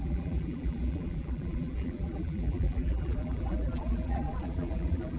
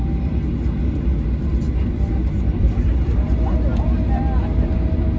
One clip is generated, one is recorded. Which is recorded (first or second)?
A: second